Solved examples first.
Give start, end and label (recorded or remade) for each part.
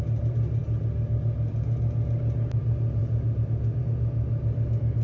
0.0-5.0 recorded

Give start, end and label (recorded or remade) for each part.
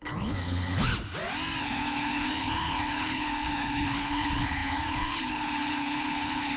0.0-0.9 remade; 0.9-1.6 recorded; 1.6-6.6 remade